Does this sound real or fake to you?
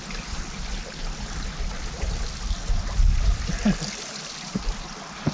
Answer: real